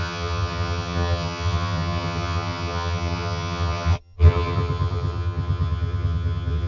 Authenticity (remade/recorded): remade